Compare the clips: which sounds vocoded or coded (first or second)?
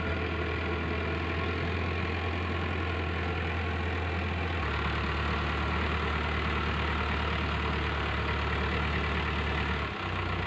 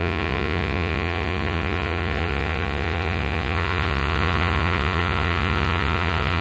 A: second